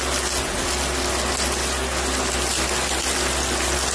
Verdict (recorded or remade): recorded